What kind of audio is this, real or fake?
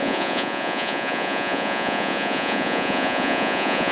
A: fake